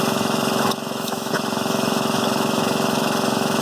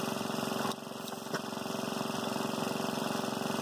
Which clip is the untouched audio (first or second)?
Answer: second